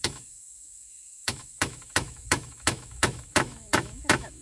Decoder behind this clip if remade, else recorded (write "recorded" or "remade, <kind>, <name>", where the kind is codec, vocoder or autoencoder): remade, autoencoder, DAC-VAE